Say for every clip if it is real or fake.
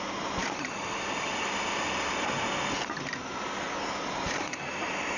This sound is real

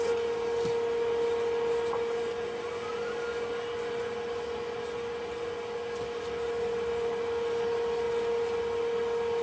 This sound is real